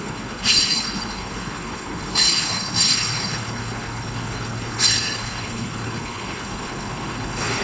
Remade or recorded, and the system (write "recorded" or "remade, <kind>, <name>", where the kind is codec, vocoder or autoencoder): remade, codec, HILCodec